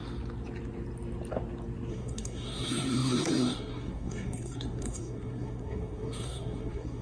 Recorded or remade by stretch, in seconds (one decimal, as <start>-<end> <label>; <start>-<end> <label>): 0.0-1.9 recorded; 1.9-7.0 remade